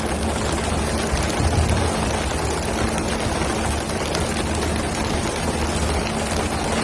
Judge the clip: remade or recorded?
recorded